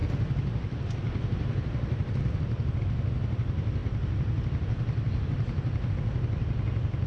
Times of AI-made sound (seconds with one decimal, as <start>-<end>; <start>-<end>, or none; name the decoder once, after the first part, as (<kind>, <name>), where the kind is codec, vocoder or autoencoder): none